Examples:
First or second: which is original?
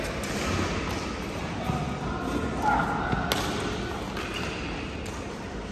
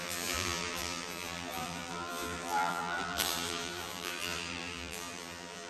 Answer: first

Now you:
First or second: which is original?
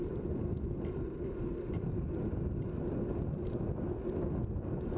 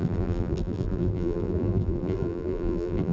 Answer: first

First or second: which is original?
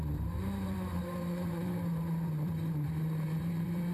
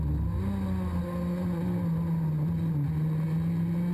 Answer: second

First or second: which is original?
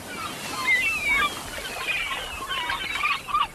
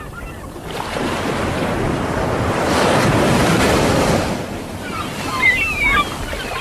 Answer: first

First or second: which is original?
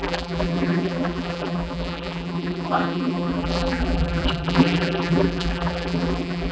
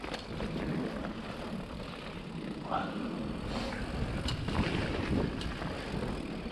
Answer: second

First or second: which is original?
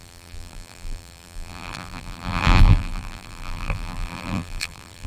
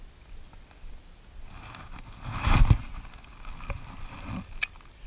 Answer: second